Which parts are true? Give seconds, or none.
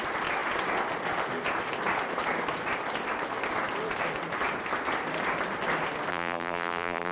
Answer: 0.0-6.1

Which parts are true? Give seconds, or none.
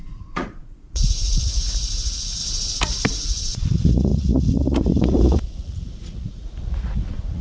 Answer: 2.4-3.1